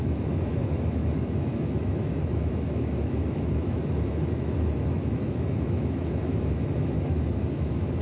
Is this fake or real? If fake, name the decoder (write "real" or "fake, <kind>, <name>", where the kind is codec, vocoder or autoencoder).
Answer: fake, autoencoder, DAC-VAE